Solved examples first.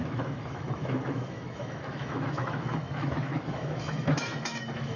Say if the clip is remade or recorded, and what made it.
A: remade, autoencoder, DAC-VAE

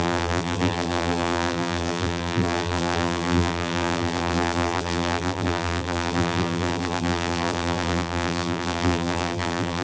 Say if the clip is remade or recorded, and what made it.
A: remade, vocoder, BigVGAN v2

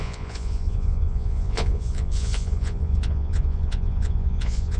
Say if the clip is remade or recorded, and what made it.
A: remade, vocoder, Vocos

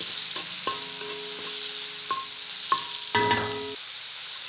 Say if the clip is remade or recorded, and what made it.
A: recorded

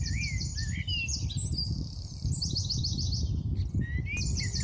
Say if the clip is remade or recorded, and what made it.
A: recorded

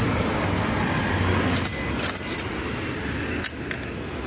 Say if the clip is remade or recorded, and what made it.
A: recorded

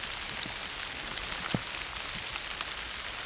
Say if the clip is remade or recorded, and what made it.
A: recorded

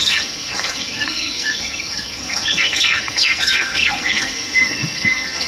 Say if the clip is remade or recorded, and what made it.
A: remade, codec, SNAC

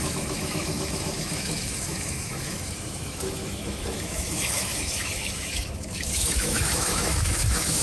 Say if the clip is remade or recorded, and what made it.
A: remade, autoencoder, DAC-VAE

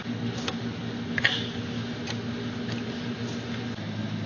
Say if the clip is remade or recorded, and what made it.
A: recorded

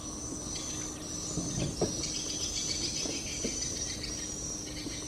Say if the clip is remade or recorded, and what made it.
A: recorded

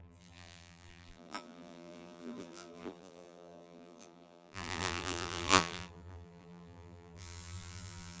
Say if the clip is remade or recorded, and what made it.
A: remade, vocoder, BigVGAN v2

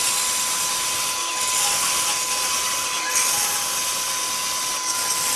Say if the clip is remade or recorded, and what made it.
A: recorded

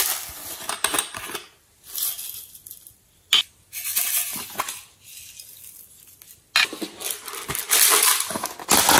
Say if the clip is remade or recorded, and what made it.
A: recorded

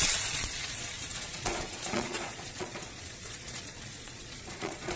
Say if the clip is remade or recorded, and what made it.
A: remade, vocoder, Vocos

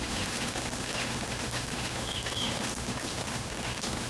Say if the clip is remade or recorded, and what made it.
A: remade, autoencoder, DAC-VAE